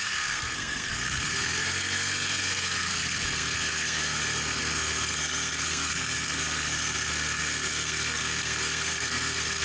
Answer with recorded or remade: remade